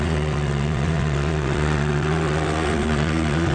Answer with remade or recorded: remade